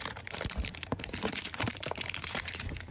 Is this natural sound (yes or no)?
no